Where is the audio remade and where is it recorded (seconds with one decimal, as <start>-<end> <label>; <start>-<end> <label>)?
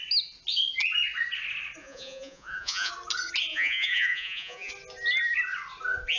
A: 0.0-1.8 recorded; 1.8-2.9 remade; 2.9-3.5 recorded; 3.5-4.7 remade; 4.7-6.2 recorded